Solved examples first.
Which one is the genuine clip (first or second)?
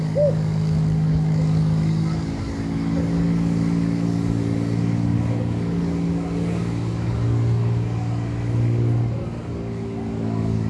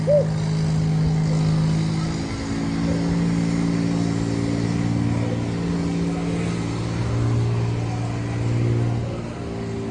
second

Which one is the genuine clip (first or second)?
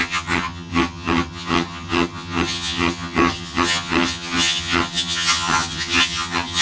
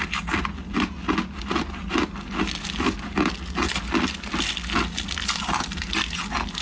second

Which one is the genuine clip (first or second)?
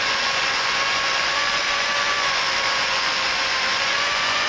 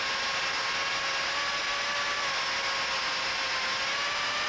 second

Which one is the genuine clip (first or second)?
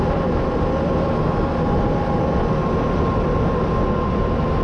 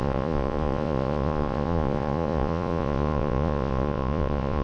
first